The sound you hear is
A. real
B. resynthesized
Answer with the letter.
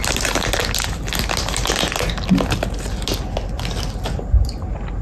A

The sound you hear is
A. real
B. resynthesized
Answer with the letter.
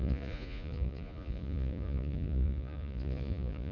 B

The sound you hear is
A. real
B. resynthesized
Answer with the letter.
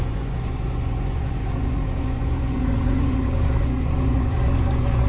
B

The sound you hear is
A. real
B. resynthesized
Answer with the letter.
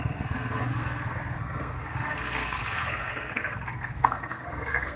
B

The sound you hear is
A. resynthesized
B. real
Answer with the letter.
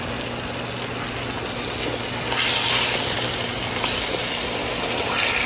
B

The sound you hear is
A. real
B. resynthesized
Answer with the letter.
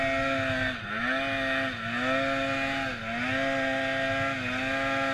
A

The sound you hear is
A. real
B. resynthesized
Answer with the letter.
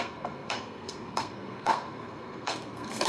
B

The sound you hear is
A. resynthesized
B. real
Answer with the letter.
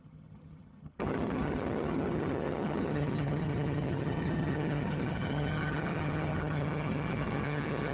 A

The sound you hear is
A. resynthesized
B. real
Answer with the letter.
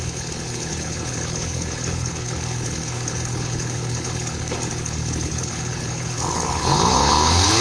A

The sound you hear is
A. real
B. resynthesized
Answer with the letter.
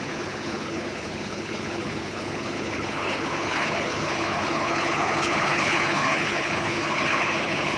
B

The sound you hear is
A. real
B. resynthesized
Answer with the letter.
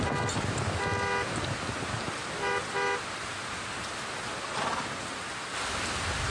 A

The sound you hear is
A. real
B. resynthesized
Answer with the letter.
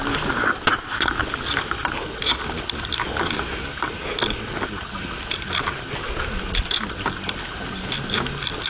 A